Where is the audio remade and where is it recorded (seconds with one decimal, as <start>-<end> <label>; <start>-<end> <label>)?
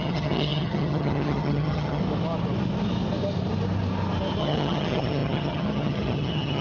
0.0-2.0 remade; 2.0-4.4 recorded; 4.4-6.6 remade